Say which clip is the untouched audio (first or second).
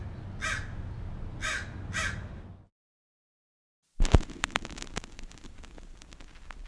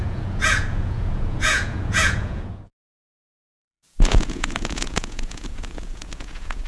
first